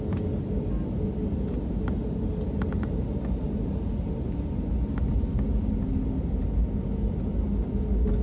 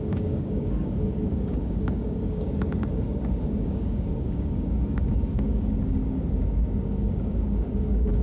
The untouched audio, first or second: first